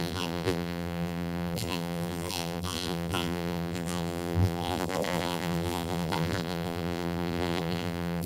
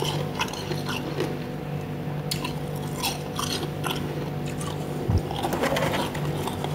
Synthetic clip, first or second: first